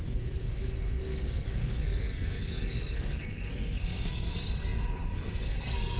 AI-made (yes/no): yes